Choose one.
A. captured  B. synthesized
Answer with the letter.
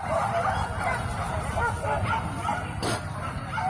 A